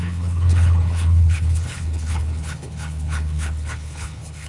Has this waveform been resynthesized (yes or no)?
yes